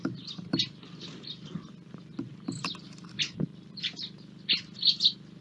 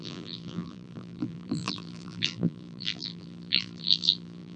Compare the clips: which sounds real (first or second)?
first